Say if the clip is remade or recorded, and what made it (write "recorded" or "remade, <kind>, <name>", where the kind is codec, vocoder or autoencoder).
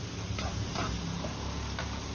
recorded